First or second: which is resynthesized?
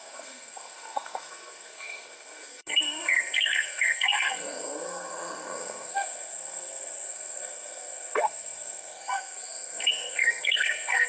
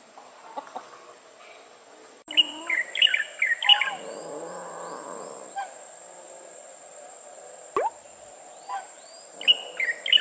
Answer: first